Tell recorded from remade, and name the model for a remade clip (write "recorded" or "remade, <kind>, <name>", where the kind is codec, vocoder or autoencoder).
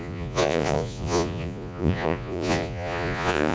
remade, vocoder, Vocos